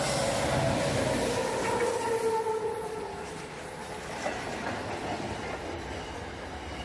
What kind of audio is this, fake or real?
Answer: real